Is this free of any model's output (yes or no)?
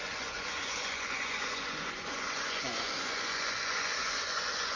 no